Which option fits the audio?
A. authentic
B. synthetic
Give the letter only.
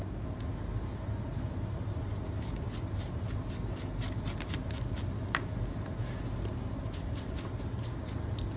A